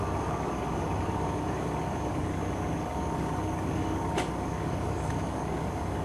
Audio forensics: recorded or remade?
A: remade